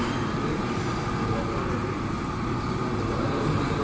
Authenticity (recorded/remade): recorded